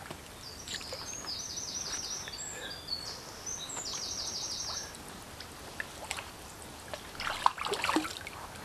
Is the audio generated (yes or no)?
no